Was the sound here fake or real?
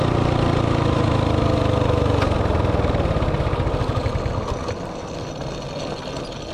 real